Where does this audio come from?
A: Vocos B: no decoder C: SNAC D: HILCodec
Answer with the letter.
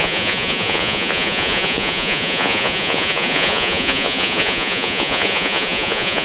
A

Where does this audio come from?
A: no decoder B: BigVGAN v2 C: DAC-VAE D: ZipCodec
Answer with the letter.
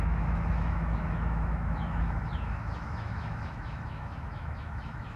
C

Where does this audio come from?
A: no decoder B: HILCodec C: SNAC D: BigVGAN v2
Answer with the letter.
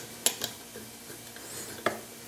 A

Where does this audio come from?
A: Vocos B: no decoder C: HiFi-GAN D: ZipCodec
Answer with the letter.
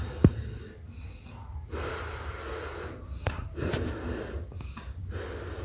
B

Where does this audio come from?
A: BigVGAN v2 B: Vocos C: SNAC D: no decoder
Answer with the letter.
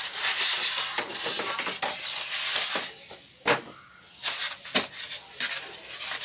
D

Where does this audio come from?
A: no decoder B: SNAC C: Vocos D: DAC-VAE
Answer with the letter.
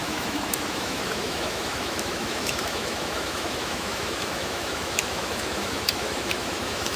D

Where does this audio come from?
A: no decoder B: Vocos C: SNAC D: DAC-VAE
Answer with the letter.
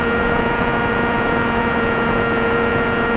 B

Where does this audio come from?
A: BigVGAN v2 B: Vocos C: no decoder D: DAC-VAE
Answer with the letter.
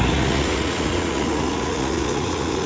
B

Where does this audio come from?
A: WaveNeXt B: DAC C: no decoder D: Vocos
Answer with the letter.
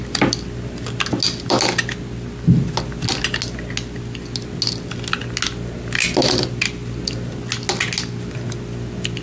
C